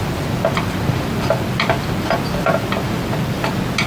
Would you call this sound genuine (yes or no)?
yes